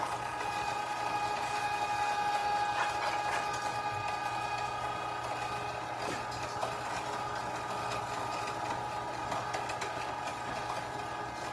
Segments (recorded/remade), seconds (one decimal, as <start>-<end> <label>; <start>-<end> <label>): 0.0-11.5 recorded